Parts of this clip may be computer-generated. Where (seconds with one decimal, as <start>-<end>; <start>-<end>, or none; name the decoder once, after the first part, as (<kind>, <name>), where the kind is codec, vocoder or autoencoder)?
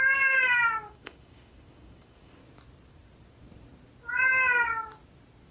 0.0-2.4 (codec, DAC)